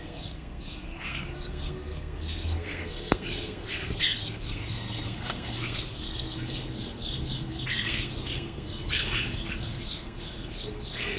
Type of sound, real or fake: fake